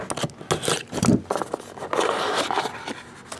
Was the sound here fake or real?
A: real